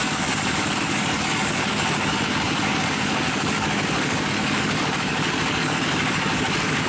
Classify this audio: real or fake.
fake